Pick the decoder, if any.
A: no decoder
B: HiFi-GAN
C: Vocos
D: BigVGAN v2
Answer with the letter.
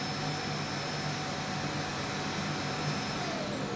A